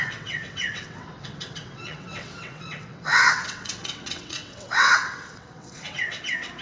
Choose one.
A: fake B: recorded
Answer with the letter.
A